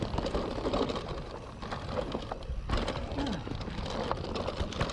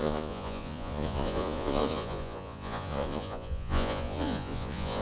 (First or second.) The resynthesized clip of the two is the second